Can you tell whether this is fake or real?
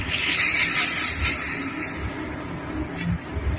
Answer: real